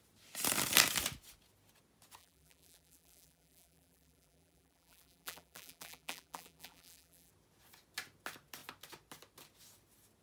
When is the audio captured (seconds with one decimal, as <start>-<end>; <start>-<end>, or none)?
0.0-2.2; 7.3-10.2